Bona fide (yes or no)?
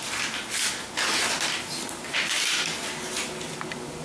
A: yes